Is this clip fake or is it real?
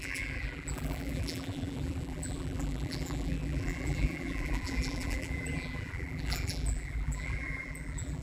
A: fake